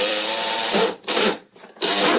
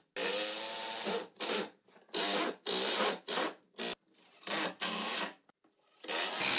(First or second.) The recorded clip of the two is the second